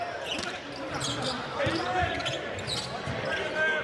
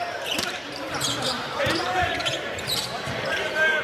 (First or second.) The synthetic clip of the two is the second